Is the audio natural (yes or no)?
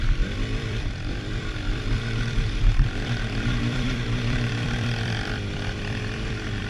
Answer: no